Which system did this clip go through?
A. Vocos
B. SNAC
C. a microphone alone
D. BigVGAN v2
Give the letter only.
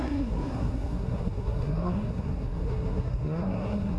B